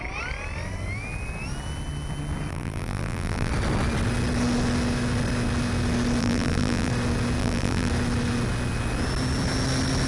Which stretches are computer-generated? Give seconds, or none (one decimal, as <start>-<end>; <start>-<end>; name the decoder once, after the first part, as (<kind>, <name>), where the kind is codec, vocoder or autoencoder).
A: 2.5-3.5 (vocoder, BigVGAN v2); 6.2-6.9; 7.4-7.9